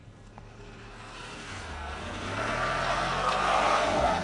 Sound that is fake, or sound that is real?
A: fake